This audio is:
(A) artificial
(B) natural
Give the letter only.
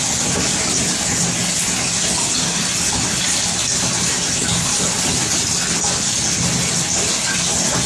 B